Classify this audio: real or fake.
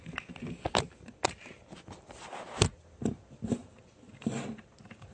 real